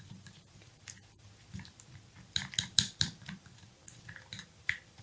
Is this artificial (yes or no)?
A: yes